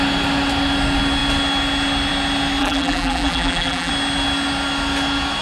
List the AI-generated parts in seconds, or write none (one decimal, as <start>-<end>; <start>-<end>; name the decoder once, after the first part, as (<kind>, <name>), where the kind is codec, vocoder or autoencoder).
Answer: 2.6-3.9 (vocoder, BigVGAN v2)